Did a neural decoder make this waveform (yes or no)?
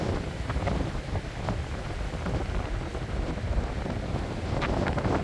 no